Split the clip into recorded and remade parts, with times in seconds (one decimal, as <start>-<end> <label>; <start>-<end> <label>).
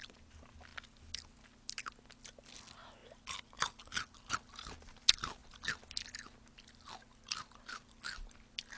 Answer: 0.0-8.8 recorded